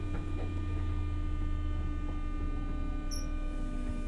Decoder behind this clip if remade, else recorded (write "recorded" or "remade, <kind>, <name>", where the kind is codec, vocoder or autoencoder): recorded